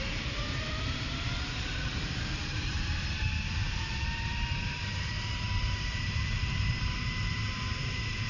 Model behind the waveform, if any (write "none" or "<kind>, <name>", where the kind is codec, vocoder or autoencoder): vocoder, BigVGAN v2